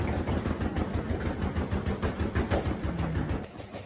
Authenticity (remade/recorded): recorded